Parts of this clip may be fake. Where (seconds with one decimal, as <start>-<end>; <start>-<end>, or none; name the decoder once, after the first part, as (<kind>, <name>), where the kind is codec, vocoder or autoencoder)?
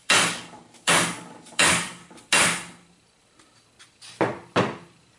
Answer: 0.0-2.0 (codec, DAC)